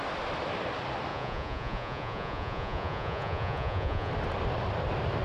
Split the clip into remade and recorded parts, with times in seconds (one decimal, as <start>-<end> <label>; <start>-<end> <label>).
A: 0.0-1.1 recorded; 1.1-4.1 remade; 4.1-5.2 recorded